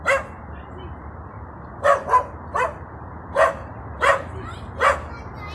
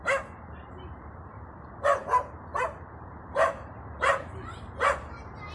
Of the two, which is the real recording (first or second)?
first